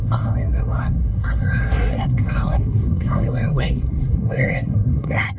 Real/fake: fake